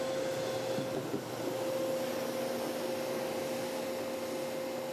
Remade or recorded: recorded